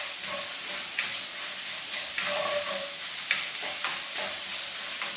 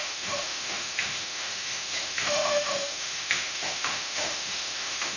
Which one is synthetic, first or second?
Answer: second